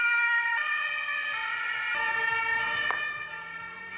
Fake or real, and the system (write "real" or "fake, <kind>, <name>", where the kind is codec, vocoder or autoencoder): real